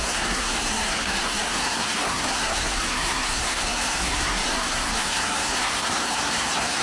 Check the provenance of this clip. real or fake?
fake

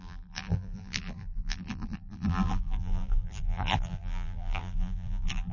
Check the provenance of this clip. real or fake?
fake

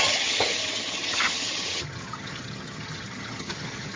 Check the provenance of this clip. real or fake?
fake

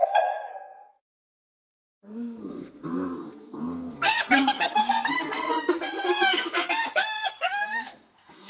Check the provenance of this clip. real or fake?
fake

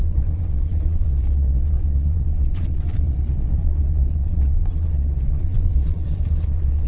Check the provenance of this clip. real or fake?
fake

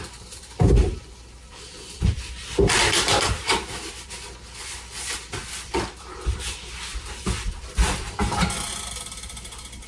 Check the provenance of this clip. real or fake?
fake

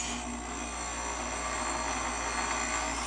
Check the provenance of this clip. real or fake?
real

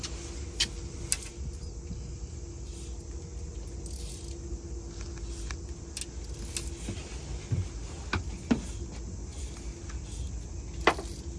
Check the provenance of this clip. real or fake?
real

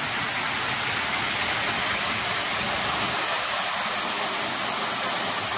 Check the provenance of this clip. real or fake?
real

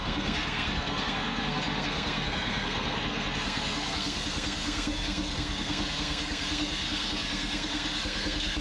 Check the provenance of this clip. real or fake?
fake